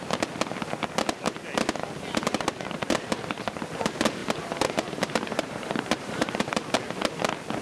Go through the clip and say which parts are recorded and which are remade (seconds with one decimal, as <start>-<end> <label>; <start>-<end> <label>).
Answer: 0.0-4.2 recorded; 4.2-6.8 remade; 6.8-7.6 recorded

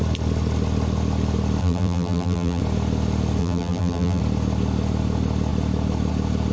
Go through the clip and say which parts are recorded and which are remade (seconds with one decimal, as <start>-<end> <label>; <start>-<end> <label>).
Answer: 0.0-1.6 recorded; 1.6-2.6 remade; 2.6-3.4 recorded; 3.4-4.2 remade; 4.2-6.5 recorded

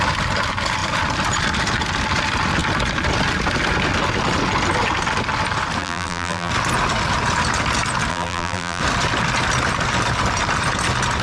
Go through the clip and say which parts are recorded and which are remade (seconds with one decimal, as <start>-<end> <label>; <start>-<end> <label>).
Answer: 0.0-5.8 recorded; 5.8-6.5 remade; 6.5-8.1 recorded; 8.1-8.8 remade; 8.8-11.2 recorded

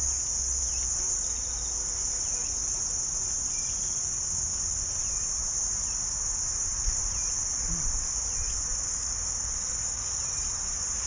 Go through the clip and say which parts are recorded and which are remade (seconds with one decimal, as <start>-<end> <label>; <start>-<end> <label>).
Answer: 0.0-6.7 recorded; 6.7-9.2 remade; 9.2-11.1 recorded